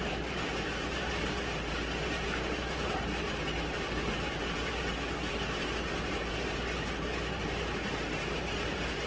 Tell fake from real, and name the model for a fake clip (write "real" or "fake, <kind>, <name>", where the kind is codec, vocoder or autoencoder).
fake, vocoder, BigVGAN v2